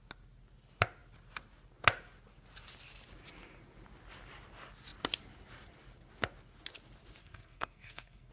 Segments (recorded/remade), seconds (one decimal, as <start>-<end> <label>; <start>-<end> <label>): 0.0-7.2 recorded; 7.2-8.3 remade